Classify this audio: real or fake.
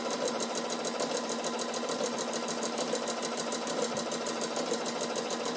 real